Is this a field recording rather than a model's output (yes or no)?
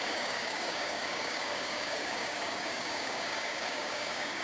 no